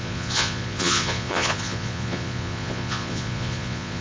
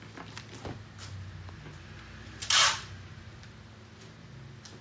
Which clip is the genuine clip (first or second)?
second